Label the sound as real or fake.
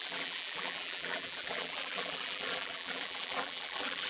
fake